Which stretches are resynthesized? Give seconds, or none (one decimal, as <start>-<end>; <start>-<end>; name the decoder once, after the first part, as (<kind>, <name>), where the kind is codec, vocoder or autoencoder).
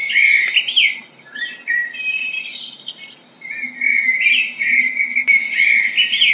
0.0-0.6 (vocoder, BigVGAN v2); 1.8-2.8; 3.9-5.0